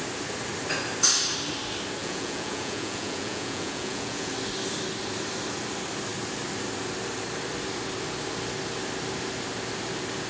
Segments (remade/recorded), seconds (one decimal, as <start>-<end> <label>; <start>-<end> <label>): 0.0-2.0 recorded; 2.0-4.3 remade; 4.3-10.3 recorded